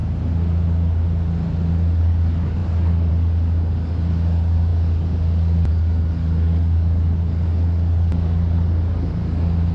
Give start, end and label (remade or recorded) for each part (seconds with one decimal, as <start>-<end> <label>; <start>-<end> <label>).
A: 0.0-2.0 recorded; 2.0-9.7 remade